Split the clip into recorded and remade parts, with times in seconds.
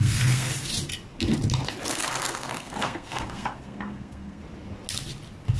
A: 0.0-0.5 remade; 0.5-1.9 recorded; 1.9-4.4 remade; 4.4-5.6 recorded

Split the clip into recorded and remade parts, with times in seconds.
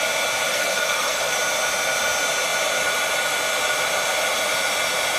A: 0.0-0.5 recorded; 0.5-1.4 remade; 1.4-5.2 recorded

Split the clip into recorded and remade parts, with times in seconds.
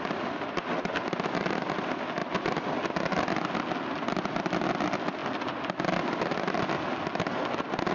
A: 0.0-7.9 recorded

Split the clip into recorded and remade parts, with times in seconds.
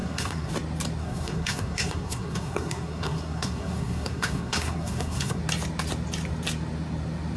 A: 0.0-0.5 remade; 0.5-1.0 recorded; 1.0-5.4 remade; 5.4-7.4 recorded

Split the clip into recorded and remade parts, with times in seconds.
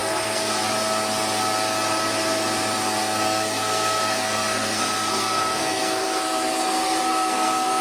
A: 0.0-0.6 remade; 0.6-3.0 recorded; 3.0-7.8 remade